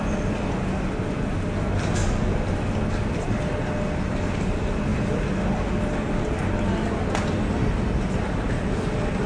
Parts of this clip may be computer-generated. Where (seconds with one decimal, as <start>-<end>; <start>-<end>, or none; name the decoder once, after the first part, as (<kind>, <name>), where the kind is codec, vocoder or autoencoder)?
none